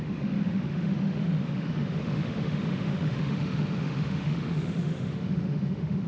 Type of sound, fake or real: fake